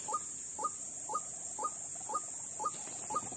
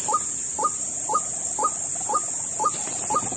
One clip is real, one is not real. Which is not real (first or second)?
second